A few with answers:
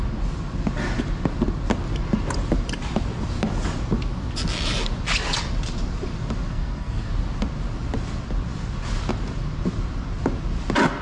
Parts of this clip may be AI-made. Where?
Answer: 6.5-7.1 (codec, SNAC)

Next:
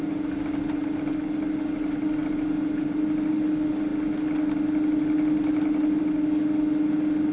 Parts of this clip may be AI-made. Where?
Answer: none

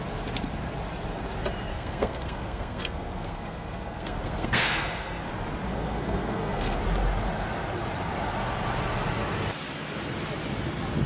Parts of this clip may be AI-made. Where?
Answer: 1.7-5.3 (codec, SNAC); 5.7-6.8

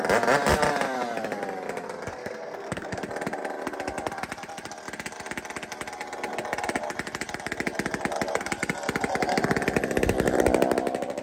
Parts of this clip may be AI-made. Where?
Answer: 2.1-3.0 (codec, SNAC)

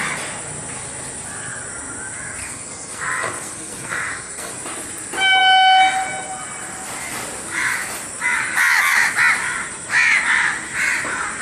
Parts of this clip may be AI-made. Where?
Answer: 2.4-4.5 (codec, SNAC)